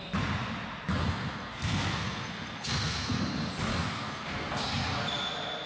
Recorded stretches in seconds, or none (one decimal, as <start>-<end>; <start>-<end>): 0.0-1.0; 3.2-3.7; 4.6-5.7